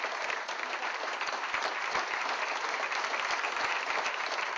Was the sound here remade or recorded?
recorded